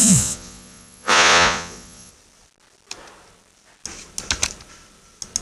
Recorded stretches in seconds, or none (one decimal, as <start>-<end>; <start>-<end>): 2.1-5.4